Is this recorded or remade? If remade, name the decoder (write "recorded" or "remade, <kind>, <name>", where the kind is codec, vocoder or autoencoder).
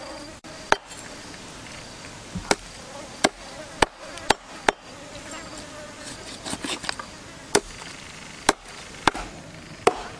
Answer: recorded